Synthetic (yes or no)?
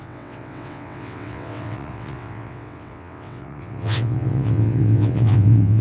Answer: yes